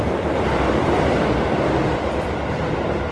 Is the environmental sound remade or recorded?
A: recorded